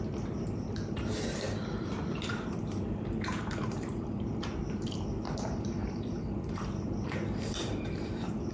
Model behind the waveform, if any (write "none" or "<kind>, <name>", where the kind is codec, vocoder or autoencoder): vocoder, BigVGAN v2